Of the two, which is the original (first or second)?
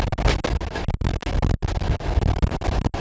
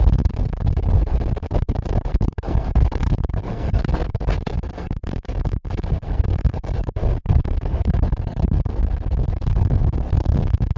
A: first